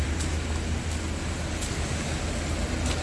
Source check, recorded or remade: recorded